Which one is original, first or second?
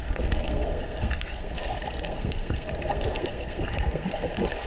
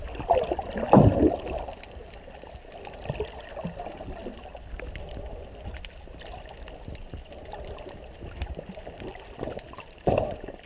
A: second